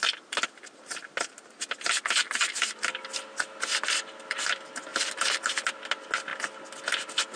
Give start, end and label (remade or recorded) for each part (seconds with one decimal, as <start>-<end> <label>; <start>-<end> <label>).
0.0-7.4 recorded